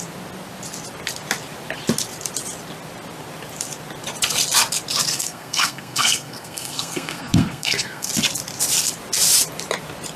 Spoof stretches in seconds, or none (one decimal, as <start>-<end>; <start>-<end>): 5.1-8.1